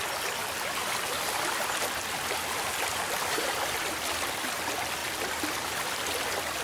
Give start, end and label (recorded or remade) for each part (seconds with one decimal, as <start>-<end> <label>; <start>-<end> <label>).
0.0-0.4 recorded; 0.4-4.4 remade; 4.4-5.0 recorded; 5.0-5.8 remade; 5.8-6.6 recorded